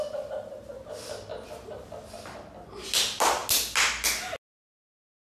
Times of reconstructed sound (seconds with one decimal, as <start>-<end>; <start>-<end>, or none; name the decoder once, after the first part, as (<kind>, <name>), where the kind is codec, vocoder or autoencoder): none